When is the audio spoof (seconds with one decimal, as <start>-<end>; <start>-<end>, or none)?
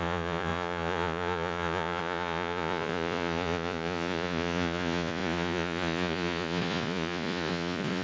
0.0-8.0